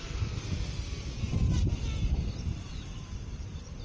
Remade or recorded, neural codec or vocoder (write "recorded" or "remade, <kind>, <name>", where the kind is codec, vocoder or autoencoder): remade, vocoder, BigVGAN v2